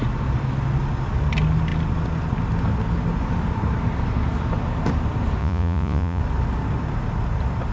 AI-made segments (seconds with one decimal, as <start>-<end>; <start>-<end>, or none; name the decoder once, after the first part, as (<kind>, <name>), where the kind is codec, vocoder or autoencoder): 5.4-6.2 (vocoder, Vocos)